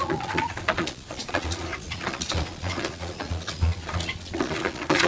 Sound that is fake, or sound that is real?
fake